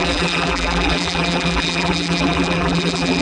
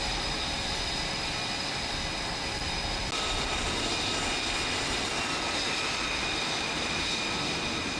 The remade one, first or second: first